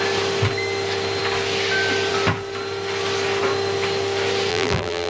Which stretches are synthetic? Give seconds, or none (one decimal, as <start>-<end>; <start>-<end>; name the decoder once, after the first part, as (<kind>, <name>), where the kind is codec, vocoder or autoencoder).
4.5-5.1 (vocoder, BigVGAN v2)